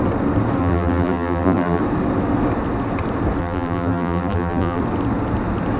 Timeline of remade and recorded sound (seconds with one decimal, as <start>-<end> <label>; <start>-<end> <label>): 0.0-0.6 recorded; 0.6-1.8 remade; 1.8-3.4 recorded; 3.4-4.8 remade; 4.8-5.8 recorded